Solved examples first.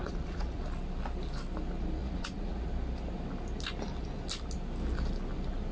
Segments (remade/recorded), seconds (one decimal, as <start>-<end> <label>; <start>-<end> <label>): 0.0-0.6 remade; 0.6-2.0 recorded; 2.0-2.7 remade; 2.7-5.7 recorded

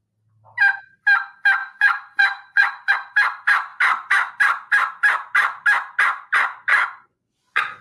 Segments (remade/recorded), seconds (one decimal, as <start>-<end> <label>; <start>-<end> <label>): 0.0-1.6 recorded; 1.6-2.9 remade; 2.9-6.7 recorded; 6.7-7.8 remade

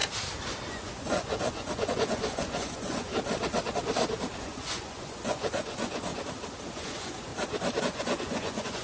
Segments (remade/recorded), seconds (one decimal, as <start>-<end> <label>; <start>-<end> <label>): 0.0-0.7 recorded; 0.7-3.1 remade; 3.1-4.4 recorded; 4.4-6.1 remade; 6.1-6.7 recorded; 6.7-7.3 remade; 7.3-7.8 recorded; 7.8-8.8 remade

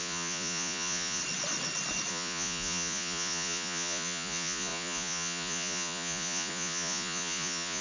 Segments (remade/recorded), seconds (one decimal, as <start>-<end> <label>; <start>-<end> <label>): 0.0-1.2 remade; 1.2-2.1 recorded; 2.1-7.8 remade

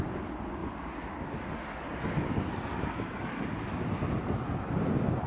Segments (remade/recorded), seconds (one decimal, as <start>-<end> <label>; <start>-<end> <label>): 0.0-5.3 recorded

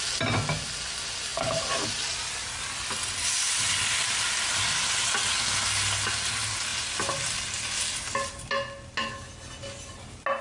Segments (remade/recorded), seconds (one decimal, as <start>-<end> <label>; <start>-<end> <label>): 0.0-10.4 recorded

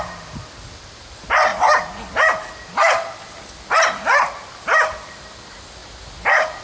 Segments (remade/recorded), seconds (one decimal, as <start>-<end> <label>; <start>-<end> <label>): 0.0-6.6 recorded